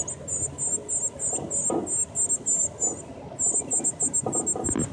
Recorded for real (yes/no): yes